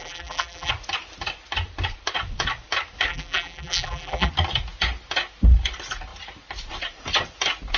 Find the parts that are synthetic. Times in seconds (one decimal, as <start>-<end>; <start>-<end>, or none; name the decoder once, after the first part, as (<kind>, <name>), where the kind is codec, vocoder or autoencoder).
0.0-0.7 (vocoder, BigVGAN v2); 3.1-4.3